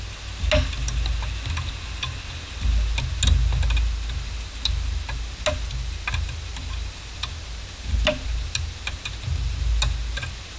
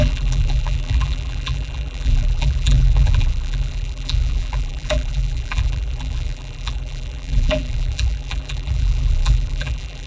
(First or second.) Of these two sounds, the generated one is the second